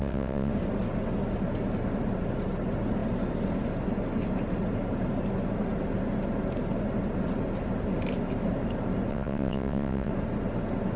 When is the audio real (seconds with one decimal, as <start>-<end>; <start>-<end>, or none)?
0.5-9.1; 10.1-11.0